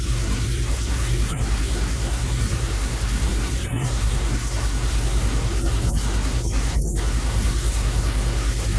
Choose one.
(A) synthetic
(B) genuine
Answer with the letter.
A